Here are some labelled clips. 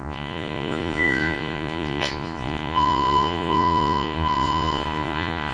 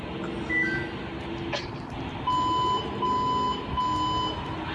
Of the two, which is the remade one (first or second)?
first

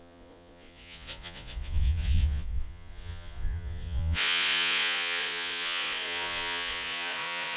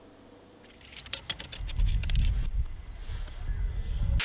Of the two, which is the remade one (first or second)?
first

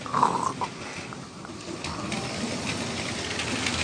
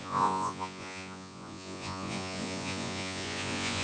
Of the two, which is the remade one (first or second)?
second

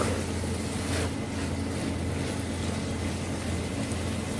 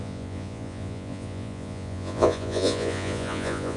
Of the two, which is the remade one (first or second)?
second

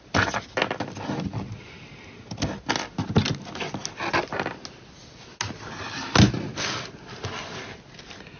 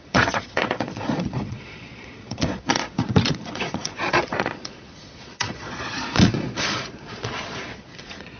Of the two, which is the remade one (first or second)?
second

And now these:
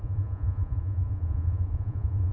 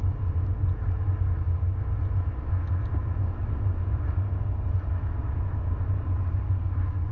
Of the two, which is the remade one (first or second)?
first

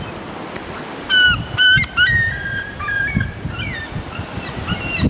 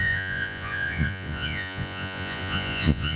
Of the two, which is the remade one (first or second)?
second